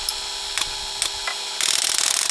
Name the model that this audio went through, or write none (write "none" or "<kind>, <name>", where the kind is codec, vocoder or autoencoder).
none